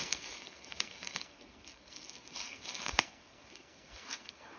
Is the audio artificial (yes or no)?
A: yes